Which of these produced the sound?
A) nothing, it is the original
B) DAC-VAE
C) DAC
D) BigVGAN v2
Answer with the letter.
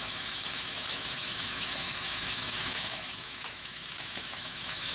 B